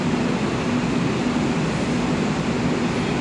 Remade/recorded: recorded